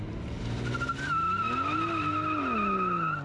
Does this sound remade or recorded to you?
recorded